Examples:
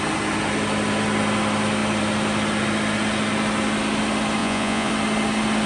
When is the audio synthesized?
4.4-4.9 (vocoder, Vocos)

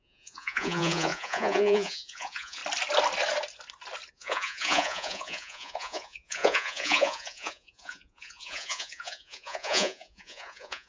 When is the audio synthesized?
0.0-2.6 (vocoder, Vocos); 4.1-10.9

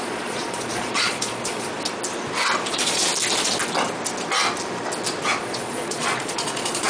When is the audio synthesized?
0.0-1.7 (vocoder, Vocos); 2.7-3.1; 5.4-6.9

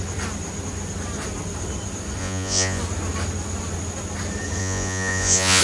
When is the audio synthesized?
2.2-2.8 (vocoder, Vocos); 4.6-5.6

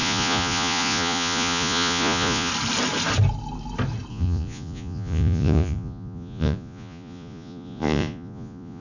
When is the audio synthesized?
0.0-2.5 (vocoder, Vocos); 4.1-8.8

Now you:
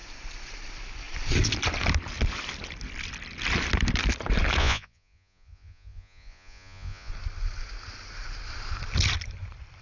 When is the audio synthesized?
4.6-7.1 (vocoder, Vocos)

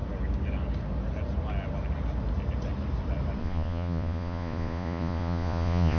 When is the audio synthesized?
3.4-6.0 (vocoder, Vocos)